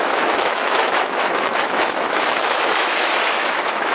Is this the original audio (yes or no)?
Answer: no